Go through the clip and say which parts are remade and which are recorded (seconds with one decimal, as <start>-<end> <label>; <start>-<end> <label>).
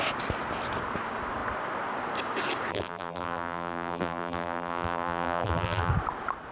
0.0-2.7 recorded; 2.7-5.9 remade; 5.9-6.5 recorded